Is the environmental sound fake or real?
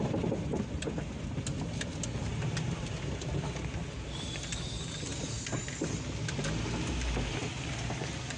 real